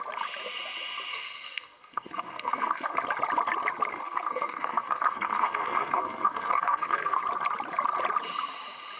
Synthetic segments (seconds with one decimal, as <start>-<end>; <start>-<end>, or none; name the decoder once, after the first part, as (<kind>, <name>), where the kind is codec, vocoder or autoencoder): 1.1-3.0 (codec, SNAC); 3.9-7.2